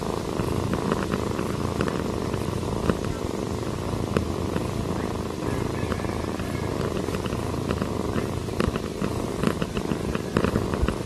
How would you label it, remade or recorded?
remade